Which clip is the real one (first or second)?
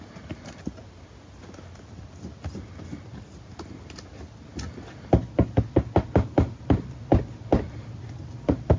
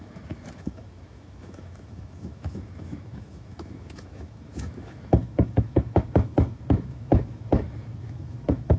first